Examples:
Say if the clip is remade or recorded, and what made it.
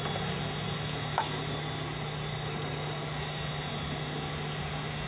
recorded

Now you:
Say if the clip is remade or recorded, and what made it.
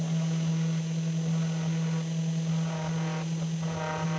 recorded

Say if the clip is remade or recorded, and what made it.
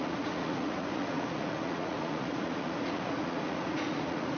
remade, vocoder, Vocos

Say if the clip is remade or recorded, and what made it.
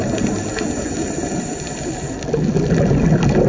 recorded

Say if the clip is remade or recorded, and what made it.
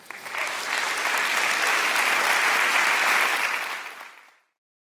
recorded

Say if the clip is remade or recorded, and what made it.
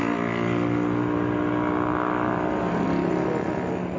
recorded